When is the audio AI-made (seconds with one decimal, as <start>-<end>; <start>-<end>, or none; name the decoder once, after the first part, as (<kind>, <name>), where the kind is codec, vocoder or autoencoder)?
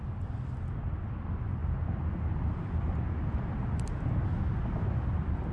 none